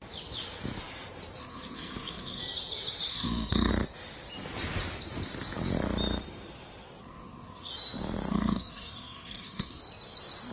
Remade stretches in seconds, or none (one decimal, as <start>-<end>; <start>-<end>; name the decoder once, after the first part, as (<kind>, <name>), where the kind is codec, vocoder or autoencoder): 1.4-2.4 (codec, SNAC); 3.1-3.7; 7.0-7.7; 8.3-9.8